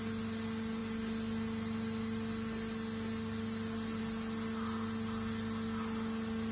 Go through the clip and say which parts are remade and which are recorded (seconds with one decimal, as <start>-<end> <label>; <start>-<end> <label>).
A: 0.0-6.5 recorded